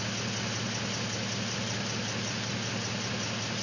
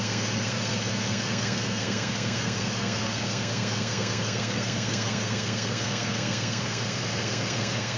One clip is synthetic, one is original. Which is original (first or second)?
first